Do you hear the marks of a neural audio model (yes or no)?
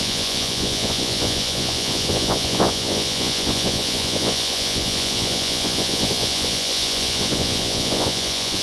yes